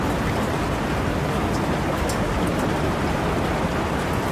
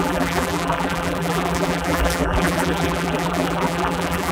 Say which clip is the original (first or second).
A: first